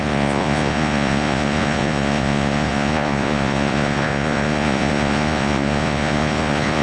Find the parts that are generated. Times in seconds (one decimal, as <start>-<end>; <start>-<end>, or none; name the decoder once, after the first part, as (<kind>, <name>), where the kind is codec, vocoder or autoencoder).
0.0-6.8 (vocoder, Vocos)